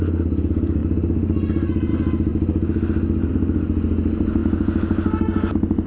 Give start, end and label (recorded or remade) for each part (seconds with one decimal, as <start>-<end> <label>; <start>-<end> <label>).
0.0-5.9 recorded